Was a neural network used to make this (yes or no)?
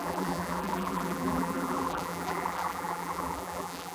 yes